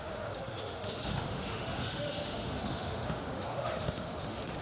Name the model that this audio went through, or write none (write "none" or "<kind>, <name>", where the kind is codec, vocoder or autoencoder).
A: autoencoder, DAC-VAE